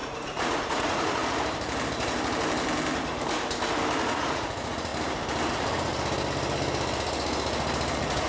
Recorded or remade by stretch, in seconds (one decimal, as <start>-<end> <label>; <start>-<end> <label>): 0.0-1.2 remade; 1.2-4.0 recorded; 4.0-4.9 remade; 4.9-5.5 recorded; 5.5-5.9 remade; 5.9-7.9 recorded; 7.9-8.3 remade